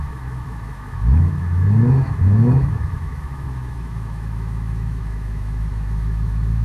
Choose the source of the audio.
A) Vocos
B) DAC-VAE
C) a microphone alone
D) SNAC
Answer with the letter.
B